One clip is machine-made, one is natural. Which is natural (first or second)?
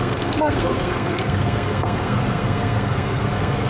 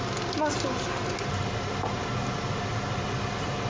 second